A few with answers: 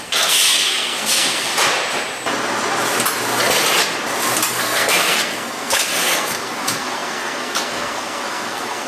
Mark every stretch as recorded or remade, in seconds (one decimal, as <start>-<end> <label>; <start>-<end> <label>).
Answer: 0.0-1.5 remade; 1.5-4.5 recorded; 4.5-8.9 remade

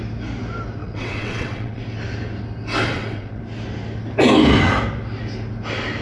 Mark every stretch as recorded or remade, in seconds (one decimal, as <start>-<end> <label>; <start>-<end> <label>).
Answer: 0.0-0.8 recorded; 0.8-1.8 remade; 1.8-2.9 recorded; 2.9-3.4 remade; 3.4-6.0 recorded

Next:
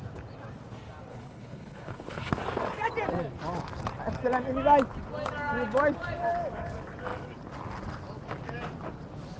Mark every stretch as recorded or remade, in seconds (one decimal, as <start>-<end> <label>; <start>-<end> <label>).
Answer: 0.0-1.1 recorded; 1.1-2.3 remade; 2.3-9.4 recorded

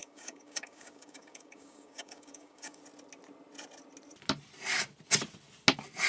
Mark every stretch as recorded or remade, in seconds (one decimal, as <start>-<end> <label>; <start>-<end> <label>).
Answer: 0.0-2.8 remade; 2.8-6.1 recorded